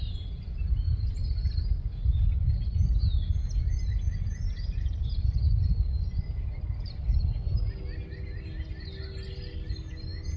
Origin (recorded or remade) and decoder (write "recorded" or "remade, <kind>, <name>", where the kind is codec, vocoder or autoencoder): recorded